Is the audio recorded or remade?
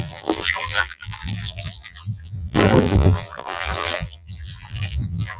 remade